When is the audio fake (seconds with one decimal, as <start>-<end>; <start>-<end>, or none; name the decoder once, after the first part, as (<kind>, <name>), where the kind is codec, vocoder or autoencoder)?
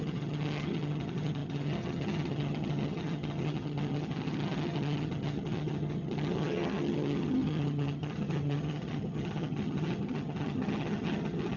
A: 0.0-11.6 (vocoder, HiFi-GAN)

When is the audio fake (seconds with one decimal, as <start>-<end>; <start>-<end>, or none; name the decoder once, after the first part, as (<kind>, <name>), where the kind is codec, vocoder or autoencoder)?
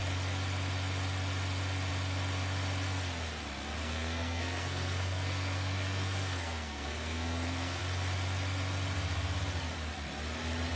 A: 3.8-7.8 (codec, SNAC)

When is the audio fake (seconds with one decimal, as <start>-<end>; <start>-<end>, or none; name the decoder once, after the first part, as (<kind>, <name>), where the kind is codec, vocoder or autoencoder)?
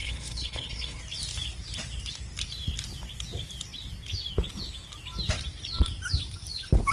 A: 0.0-1.0 (codec, HILCodec)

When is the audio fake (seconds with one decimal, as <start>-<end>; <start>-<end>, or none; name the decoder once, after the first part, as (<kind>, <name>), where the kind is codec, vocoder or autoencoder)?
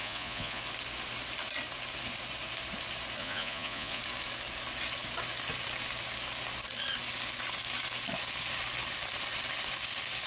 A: 0.0-0.6 (vocoder, Vocos); 3.2-4.0